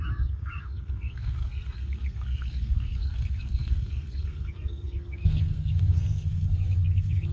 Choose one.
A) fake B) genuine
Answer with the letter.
A